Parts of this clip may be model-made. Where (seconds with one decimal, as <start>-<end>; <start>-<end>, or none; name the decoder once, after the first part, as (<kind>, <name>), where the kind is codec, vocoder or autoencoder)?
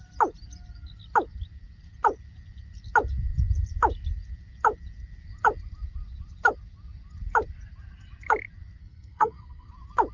8.8-9.7 (codec, SNAC)